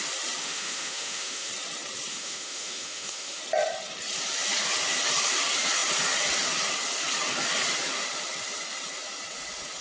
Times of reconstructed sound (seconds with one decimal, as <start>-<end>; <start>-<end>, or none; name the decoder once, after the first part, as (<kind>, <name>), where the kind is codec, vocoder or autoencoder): 0.4-1.5 (autoencoder, DAC-VAE); 2.1-3.4